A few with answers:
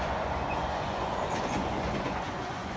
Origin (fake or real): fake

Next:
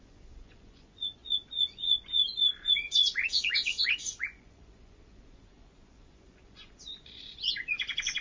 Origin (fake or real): fake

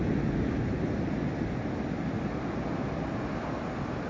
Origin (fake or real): real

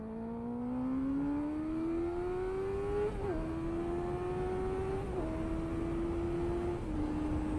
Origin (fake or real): real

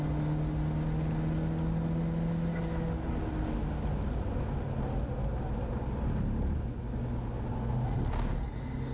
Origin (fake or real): real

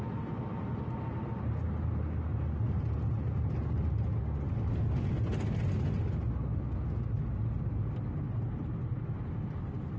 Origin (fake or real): real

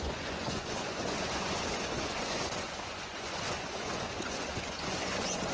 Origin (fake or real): fake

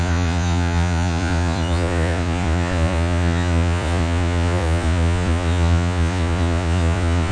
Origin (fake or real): fake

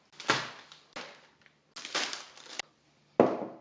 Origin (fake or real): real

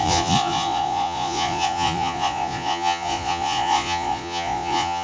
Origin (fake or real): fake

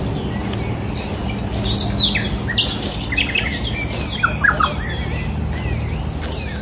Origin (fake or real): real